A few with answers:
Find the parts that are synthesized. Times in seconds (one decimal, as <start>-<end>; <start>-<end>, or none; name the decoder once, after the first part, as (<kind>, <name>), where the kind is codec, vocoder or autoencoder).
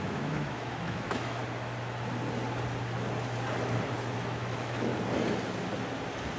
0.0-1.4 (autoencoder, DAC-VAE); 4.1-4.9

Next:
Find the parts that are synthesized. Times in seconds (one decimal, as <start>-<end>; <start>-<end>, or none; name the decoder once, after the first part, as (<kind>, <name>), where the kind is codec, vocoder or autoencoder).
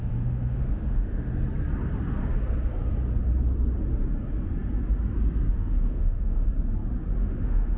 0.0-1.3 (autoencoder, DAC-VAE); 5.5-6.5; 7.2-7.8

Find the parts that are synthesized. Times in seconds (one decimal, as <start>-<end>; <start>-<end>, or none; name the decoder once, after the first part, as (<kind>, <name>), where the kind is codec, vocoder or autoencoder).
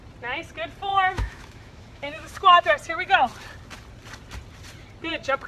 0.9-2.6 (autoencoder, DAC-VAE)